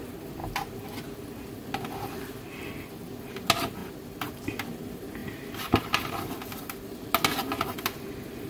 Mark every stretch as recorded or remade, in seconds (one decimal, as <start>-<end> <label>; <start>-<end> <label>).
0.0-8.5 recorded